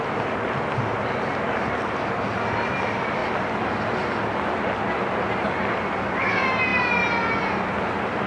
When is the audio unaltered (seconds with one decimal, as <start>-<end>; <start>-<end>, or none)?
0.0-8.3